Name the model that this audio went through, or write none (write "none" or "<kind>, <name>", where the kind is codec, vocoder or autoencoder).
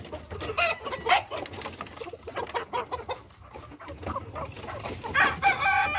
none